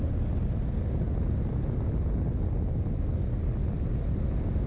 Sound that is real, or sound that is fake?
real